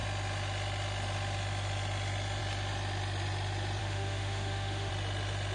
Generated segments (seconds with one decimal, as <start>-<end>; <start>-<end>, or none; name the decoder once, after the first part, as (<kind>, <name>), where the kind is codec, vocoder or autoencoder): 3.8-4.9 (autoencoder, DAC-VAE)